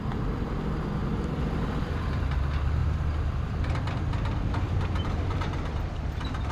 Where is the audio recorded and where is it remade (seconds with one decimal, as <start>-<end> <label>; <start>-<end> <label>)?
0.0-1.0 recorded; 1.0-2.0 remade; 2.0-2.8 recorded; 2.8-5.9 remade; 5.9-6.5 recorded